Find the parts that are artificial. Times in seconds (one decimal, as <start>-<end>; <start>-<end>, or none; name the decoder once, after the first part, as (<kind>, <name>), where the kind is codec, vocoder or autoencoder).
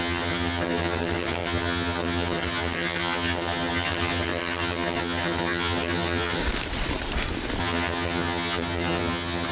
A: 0.0-6.4 (vocoder, HiFi-GAN); 7.6-9.5